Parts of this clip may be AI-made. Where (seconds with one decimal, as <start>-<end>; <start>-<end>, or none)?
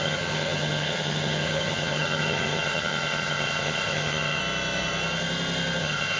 0.0-4.4; 5.8-6.2